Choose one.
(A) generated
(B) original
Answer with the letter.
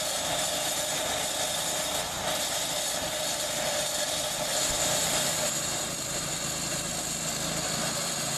B